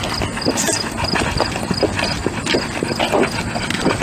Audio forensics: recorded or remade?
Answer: recorded